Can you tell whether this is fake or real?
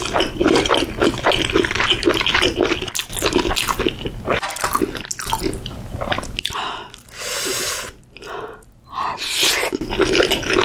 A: real